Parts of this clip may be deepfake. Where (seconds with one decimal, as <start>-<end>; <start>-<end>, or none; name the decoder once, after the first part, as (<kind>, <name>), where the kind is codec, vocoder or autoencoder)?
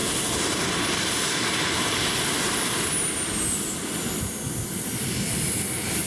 none